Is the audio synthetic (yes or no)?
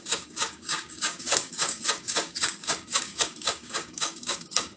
yes